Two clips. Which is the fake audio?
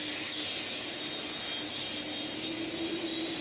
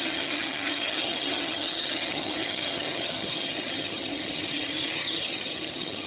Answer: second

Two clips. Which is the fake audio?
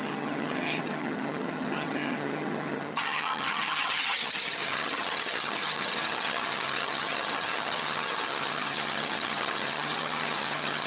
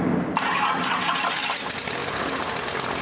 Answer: first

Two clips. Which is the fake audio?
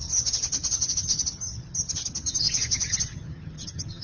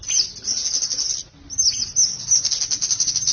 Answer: first